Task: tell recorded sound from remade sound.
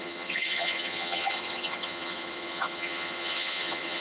remade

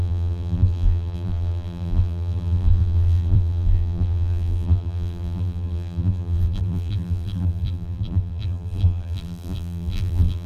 remade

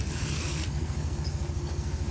remade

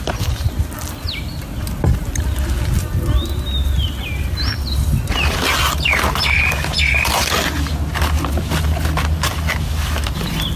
recorded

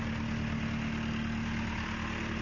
recorded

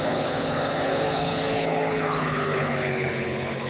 remade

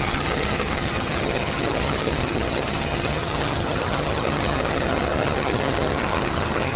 remade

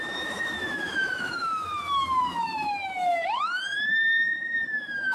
remade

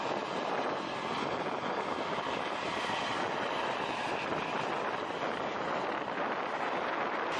recorded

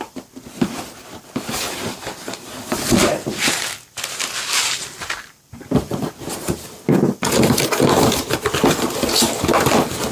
recorded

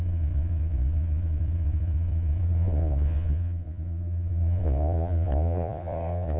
remade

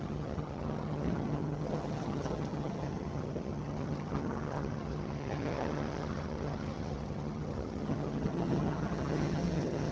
remade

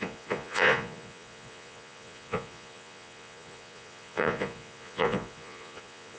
remade